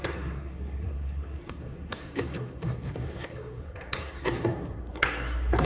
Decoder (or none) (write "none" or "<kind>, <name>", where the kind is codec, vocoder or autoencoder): codec, SNAC